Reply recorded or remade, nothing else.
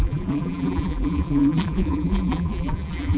remade